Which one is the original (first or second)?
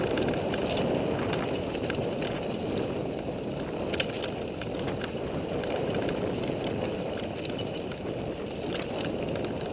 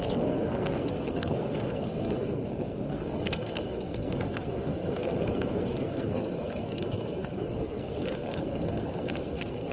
first